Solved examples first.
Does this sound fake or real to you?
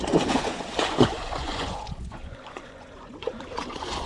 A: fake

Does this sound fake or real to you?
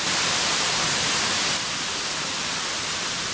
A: real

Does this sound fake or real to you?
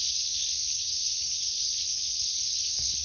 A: fake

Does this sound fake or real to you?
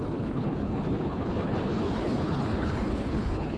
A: fake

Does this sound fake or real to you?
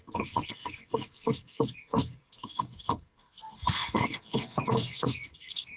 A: fake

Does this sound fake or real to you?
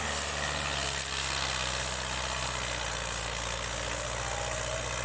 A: real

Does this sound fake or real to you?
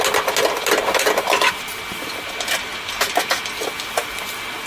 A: real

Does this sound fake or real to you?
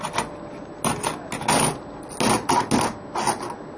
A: real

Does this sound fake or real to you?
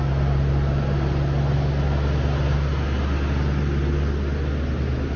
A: real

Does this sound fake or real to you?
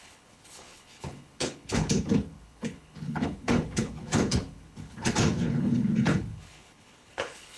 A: fake